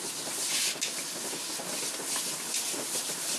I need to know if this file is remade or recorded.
recorded